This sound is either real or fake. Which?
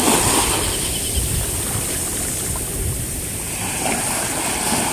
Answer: real